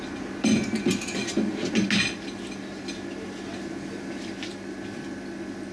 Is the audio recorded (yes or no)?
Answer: yes